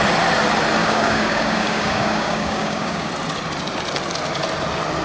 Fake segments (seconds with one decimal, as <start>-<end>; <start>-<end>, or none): 0.8-3.1